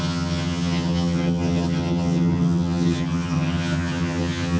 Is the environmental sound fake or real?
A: fake